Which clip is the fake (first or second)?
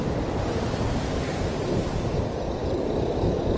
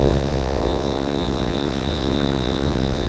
second